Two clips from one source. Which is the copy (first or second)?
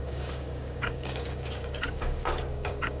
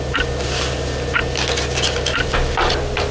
first